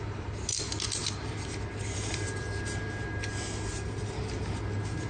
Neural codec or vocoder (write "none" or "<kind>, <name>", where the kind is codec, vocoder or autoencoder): none